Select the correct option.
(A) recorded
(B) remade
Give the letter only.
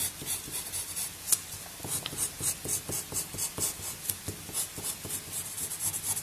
A